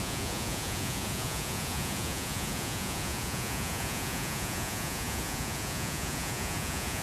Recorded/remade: remade